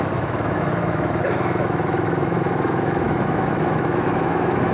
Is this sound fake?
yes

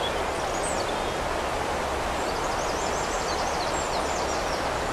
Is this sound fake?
no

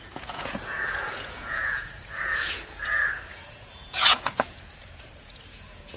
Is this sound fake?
yes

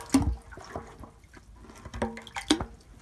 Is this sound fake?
no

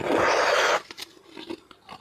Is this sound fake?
no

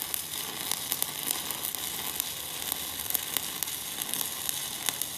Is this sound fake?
no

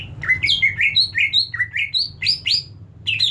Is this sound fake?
no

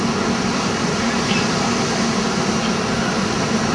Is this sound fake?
no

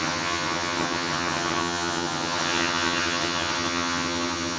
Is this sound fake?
yes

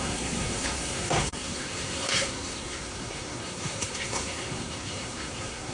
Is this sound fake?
yes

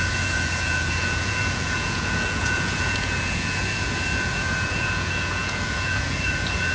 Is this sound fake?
yes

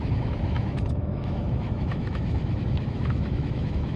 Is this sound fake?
yes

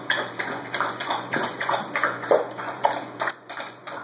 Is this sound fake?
yes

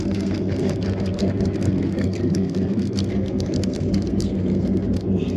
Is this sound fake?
yes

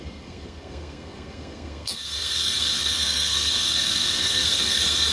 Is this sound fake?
yes